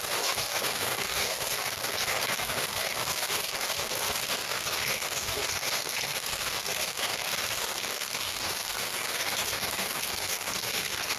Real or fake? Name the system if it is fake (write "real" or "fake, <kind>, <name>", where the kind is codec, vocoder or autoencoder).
fake, codec, DAC